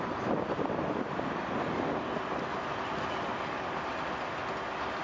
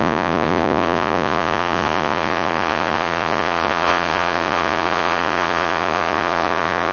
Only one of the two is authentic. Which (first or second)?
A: first